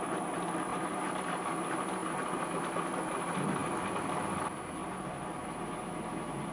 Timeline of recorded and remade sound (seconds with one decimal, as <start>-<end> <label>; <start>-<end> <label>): 0.0-0.7 recorded; 0.7-1.5 remade; 1.5-4.8 recorded; 4.8-5.6 remade; 5.6-6.5 recorded